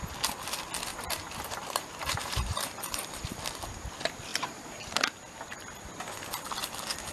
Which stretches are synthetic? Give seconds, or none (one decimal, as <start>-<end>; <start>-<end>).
0.9-3.6; 4.3-4.9